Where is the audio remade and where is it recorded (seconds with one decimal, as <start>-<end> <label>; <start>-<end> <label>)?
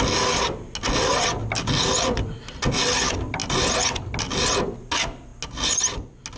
0.0-6.4 recorded